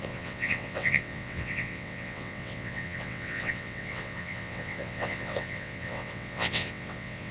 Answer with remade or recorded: remade